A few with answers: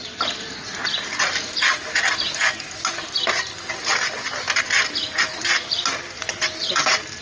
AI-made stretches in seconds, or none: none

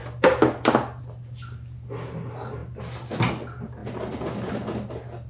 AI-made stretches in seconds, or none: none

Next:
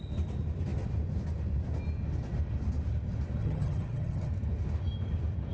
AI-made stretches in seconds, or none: 3.4-4.3 (vocoder, HiFi-GAN)